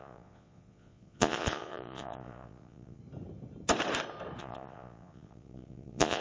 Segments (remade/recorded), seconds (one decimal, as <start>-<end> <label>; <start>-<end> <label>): 0.0-3.0 remade; 3.0-4.4 recorded; 4.4-6.2 remade